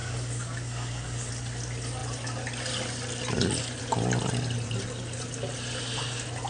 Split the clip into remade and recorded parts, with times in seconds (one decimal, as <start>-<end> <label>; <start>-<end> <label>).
0.0-1.3 remade; 1.3-6.5 recorded